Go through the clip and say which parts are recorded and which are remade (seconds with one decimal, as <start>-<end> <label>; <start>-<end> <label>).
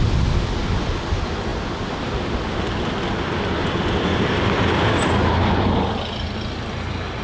0.0-7.2 recorded